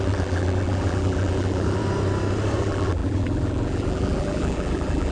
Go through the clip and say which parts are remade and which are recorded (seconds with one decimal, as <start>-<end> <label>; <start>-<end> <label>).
0.0-1.8 remade; 1.8-2.6 recorded; 2.6-5.1 remade